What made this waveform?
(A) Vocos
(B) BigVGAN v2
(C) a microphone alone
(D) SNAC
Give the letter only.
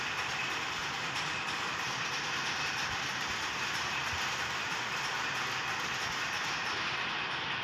C